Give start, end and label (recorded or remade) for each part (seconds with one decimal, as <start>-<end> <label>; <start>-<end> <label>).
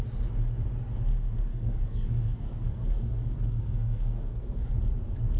0.0-1.5 recorded; 1.5-4.7 remade; 4.7-5.4 recorded